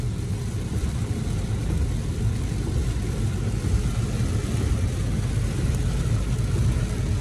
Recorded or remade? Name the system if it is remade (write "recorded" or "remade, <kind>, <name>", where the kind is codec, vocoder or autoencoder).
recorded